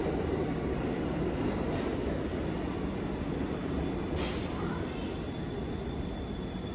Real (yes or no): yes